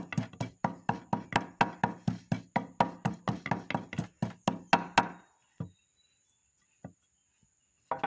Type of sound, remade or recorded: recorded